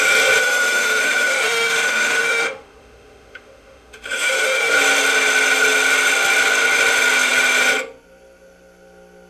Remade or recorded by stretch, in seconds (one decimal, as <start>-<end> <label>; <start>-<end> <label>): 0.0-0.4 recorded; 0.4-4.7 remade; 4.7-9.3 recorded